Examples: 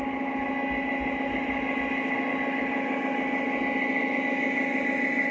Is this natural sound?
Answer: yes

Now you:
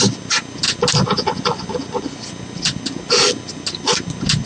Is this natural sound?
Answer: yes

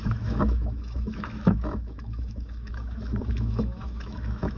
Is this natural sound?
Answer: no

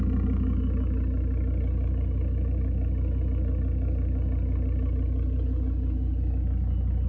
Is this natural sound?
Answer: yes